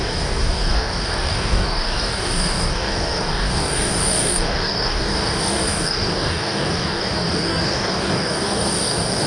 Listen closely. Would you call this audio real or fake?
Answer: fake